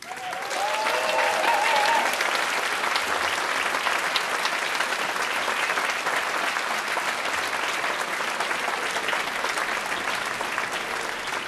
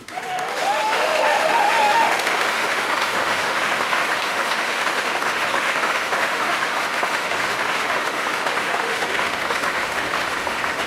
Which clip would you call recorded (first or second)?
first